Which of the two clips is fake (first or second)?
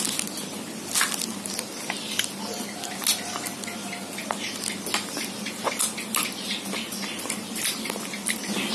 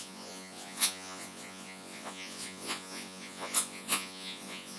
second